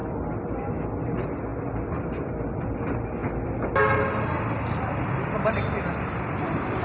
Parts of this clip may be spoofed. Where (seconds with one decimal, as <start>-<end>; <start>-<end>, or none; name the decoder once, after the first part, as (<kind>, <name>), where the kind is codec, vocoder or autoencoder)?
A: none